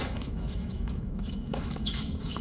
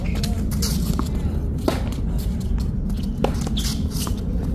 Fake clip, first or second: first